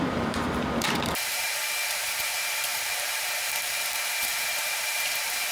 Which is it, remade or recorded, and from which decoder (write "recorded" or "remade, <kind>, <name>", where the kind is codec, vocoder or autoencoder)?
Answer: remade, vocoder, BigVGAN v2